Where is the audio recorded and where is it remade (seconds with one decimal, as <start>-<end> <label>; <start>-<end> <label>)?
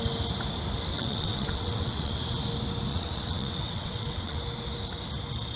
0.0-0.9 recorded; 0.9-2.2 remade; 2.2-2.9 recorded; 2.9-4.4 remade; 4.4-5.6 recorded